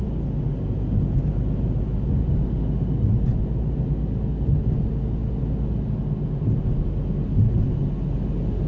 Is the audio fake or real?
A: real